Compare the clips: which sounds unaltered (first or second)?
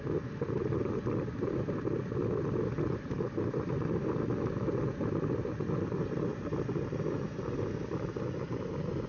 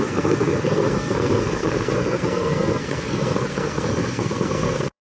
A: first